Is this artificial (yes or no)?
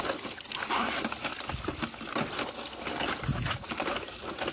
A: no